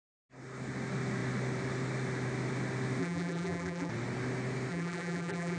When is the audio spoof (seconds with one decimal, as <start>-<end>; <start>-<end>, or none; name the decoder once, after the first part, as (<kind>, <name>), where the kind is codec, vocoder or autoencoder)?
3.0-3.9 (vocoder, BigVGAN v2); 4.7-5.6